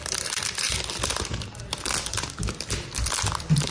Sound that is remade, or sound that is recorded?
recorded